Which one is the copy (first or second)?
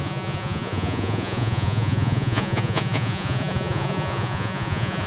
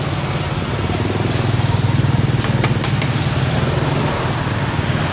first